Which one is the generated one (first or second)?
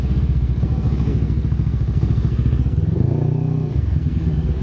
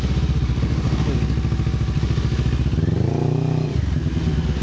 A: first